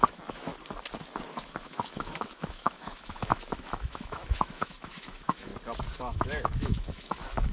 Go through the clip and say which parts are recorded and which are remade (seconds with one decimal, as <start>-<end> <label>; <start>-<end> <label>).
0.0-0.5 remade; 0.5-1.6 recorded; 1.6-5.5 remade; 5.5-6.0 recorded; 6.0-7.5 remade